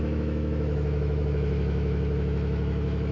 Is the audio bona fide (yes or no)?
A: no